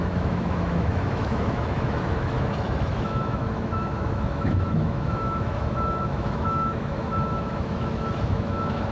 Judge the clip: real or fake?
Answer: fake